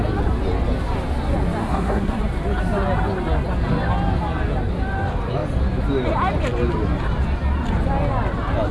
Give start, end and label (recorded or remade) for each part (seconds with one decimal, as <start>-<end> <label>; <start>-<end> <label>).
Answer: 0.0-1.6 recorded; 1.6-2.2 remade; 2.2-8.7 recorded